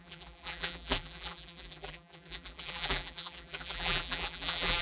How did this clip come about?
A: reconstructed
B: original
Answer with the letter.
A